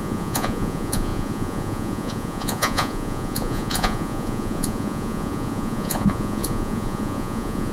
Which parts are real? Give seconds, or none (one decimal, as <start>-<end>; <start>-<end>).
none